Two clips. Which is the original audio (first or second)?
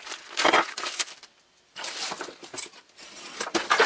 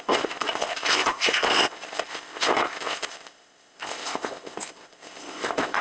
first